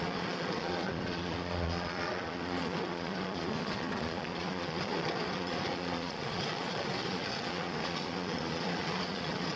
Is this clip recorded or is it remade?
remade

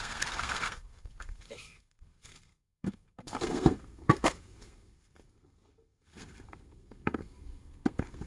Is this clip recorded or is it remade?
remade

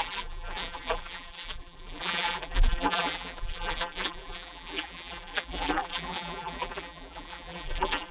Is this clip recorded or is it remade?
remade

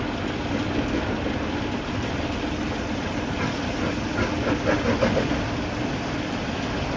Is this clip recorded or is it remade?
recorded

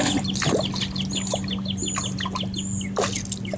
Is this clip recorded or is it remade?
recorded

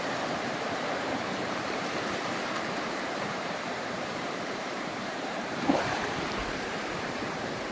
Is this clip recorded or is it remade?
remade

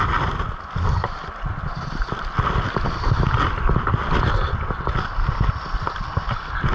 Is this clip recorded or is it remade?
recorded